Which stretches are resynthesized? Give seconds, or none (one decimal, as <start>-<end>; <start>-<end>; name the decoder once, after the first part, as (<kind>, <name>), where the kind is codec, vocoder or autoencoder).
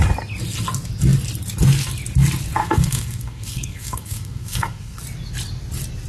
2.6-5.0 (codec, SNAC)